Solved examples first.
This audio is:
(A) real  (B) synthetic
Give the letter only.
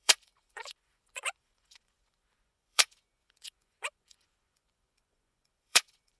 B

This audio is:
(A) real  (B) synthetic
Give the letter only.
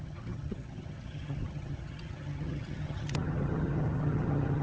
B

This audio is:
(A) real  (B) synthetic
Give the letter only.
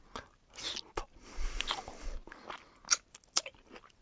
A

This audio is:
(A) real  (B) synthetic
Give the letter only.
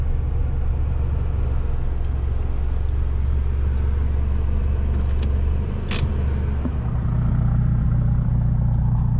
A